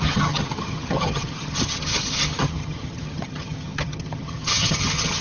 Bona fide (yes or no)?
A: no